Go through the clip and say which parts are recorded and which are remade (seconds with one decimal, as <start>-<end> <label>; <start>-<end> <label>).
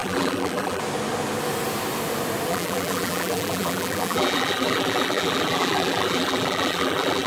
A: 0.0-0.8 remade; 0.8-2.5 recorded; 2.5-7.3 remade